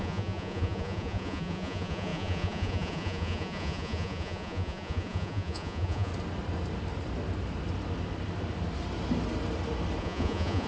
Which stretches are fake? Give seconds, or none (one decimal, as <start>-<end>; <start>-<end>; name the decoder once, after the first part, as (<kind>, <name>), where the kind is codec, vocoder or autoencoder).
0.0-6.1 (vocoder, Vocos); 10.0-10.7